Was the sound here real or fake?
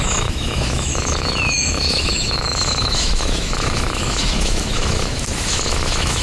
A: fake